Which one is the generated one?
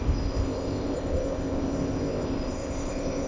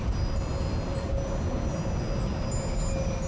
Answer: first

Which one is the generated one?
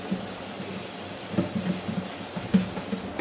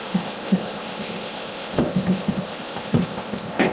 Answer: second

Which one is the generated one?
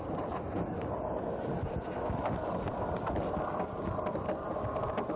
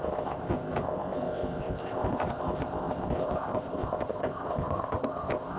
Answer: second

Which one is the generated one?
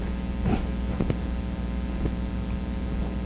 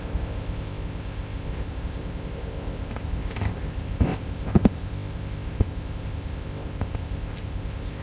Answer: second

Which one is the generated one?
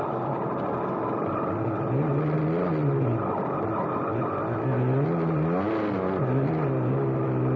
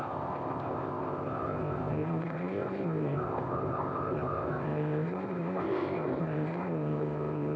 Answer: second